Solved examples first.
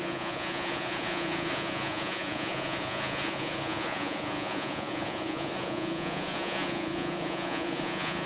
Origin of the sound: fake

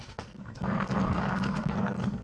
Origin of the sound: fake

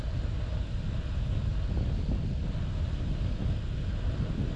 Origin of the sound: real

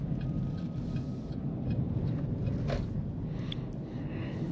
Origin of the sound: real